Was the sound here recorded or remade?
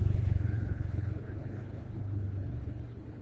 remade